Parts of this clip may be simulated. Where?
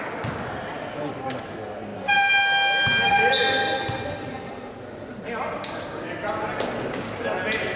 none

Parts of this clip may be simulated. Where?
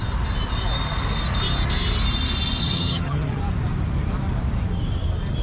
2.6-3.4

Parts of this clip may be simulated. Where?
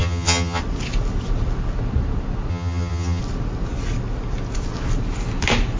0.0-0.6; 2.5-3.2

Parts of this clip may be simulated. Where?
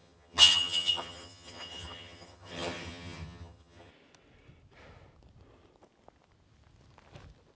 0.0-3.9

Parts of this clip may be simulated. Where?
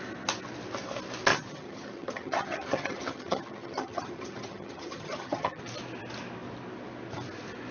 1.3-5.6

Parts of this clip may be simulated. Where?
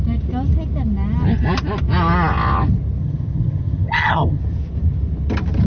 3.0-4.4